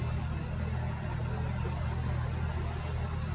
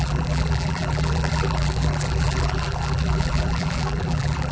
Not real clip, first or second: second